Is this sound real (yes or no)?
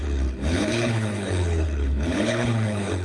no